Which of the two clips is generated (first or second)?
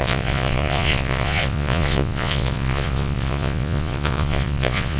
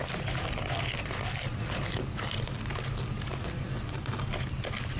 first